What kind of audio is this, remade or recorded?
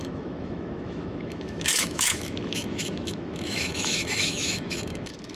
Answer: remade